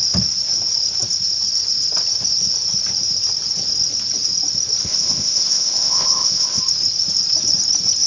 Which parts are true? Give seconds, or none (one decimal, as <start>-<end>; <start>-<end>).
0.0-4.8; 6.6-8.1